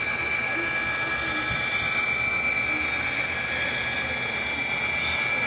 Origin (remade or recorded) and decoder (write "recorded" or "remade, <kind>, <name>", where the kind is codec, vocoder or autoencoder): recorded